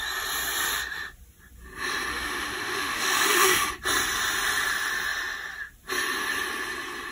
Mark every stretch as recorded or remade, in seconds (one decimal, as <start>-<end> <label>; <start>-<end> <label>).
0.0-2.1 recorded; 2.1-3.7 remade; 3.7-7.1 recorded